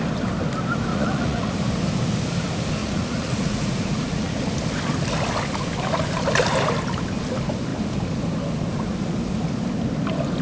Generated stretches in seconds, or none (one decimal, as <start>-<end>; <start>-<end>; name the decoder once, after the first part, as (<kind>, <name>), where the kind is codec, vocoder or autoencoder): 0.9-1.5 (vocoder, Vocos); 2.8-4.4